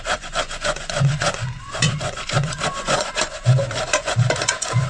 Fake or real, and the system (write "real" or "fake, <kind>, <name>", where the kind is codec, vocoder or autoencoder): fake, vocoder, Vocos